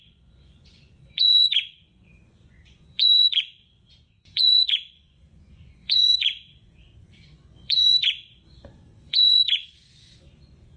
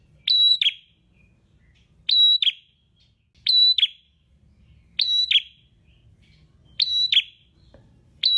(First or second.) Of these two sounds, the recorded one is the second